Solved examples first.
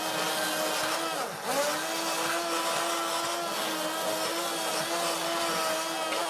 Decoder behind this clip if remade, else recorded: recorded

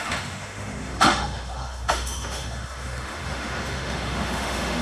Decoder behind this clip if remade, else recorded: remade, autoencoder, DAC-VAE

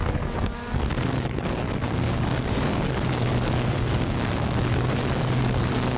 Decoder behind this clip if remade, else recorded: remade, codec, DAC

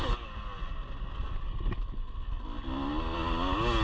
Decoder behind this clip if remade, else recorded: recorded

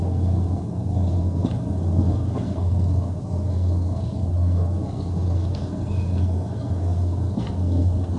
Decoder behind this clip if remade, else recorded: remade, codec, SNAC